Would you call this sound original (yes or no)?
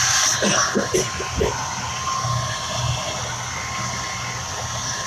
yes